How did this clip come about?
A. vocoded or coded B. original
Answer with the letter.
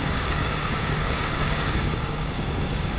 A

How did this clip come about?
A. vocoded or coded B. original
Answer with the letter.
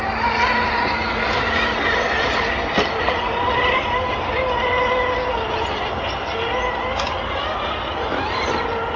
B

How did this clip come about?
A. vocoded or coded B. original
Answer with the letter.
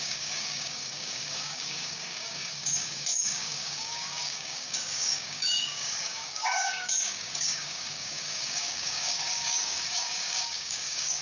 A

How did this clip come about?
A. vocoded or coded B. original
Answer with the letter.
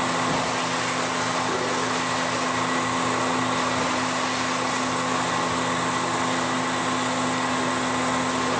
B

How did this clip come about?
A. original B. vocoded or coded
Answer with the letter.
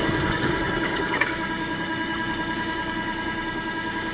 B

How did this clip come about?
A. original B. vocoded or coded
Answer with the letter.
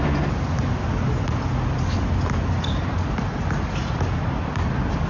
A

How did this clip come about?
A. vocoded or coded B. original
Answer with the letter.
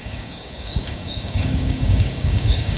A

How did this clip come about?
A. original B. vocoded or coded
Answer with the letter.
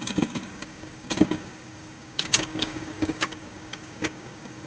B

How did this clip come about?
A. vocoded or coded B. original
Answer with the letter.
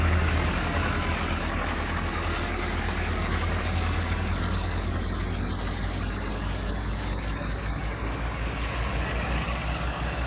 A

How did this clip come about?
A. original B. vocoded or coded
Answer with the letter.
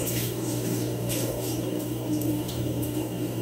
B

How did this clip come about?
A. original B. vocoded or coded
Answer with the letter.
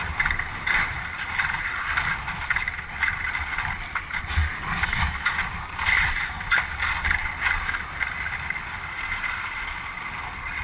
A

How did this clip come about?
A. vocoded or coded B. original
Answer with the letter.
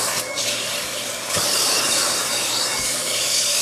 A